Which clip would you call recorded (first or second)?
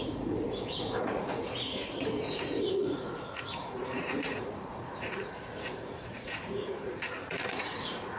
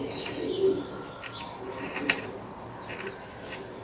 second